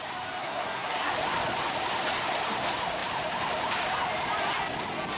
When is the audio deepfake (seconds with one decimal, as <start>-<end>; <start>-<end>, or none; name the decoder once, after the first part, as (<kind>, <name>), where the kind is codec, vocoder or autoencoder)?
0.4-1.1 (codec, SNAC)